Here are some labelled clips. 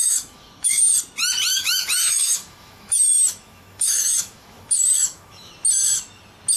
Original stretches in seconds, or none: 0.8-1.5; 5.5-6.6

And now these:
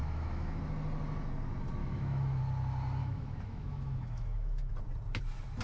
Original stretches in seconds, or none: 0.6-1.8; 2.4-3.0; 4.7-5.6

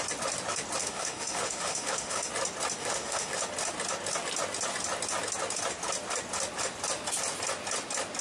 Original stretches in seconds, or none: 0.0-0.8; 2.3-2.8; 3.4-8.2

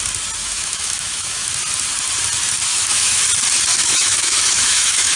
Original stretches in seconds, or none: 0.0-0.4; 1.5-2.7; 3.2-3.7

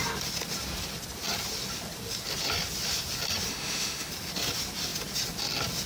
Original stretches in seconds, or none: 0.0-3.5; 4.1-5.9

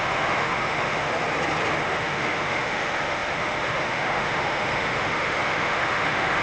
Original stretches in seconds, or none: 1.1-1.8